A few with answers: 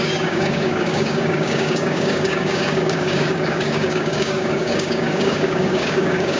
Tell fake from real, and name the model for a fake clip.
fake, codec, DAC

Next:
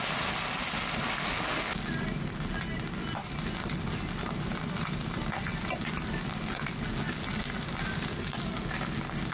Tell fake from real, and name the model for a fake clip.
real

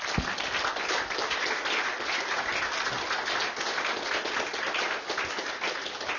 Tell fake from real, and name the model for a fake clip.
real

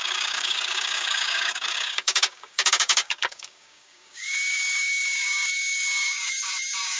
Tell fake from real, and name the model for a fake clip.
fake, codec, DAC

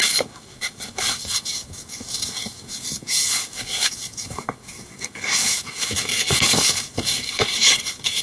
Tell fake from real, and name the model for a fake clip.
fake, codec, DAC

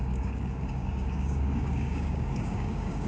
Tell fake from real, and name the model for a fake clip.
fake, codec, DAC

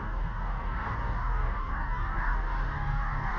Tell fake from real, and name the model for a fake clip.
fake, codec, DAC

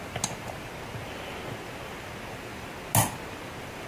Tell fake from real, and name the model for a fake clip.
real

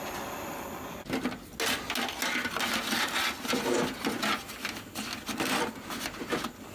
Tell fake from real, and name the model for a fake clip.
real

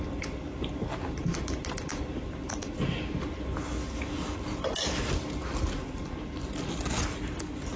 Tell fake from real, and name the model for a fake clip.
real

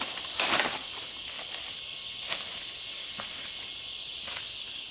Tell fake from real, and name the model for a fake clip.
real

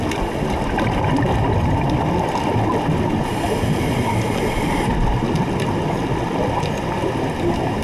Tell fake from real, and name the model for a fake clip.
real